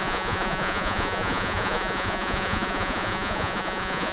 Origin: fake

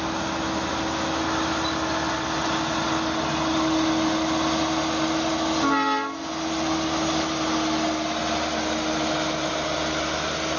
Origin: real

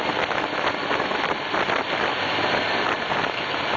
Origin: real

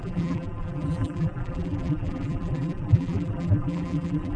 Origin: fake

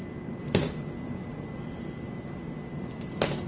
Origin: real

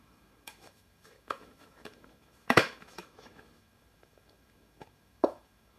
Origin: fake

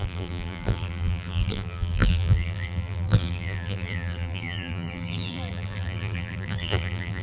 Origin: fake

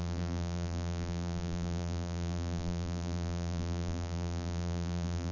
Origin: fake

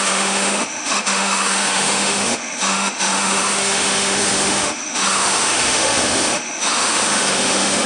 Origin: fake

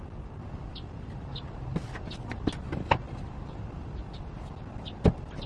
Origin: real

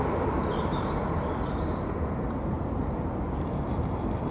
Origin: fake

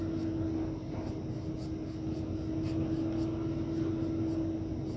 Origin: real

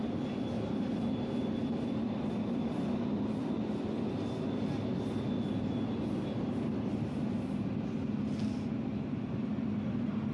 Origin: real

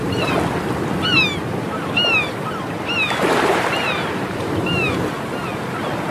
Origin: fake